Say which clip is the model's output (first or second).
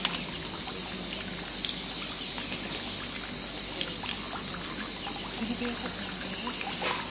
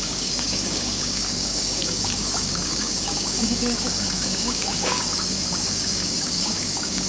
second